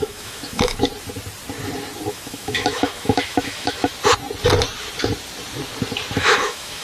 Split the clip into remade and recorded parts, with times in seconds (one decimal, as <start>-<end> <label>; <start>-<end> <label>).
0.0-0.9 remade; 0.9-2.1 recorded; 2.1-3.9 remade; 3.9-6.2 recorded; 6.2-6.8 remade